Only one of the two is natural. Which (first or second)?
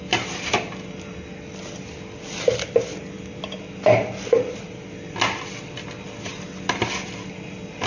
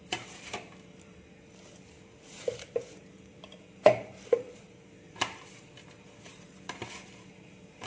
first